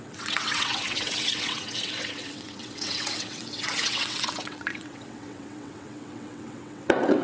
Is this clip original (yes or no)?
no